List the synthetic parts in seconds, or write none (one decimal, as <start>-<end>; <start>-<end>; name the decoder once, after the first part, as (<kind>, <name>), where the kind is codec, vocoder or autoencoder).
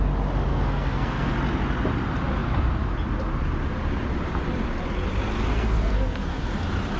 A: 0.5-1.3 (codec, SNAC); 5.5-6.5